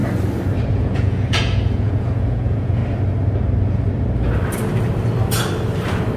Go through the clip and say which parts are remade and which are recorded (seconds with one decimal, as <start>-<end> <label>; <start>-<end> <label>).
0.0-0.7 recorded; 0.7-2.8 remade; 2.8-6.2 recorded